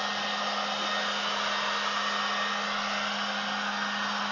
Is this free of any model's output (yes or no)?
yes